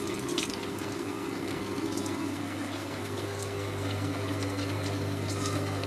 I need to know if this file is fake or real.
fake